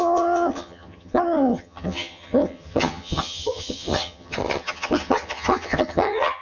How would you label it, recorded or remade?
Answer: remade